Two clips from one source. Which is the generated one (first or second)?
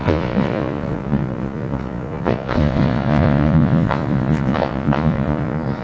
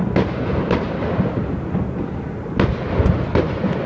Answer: first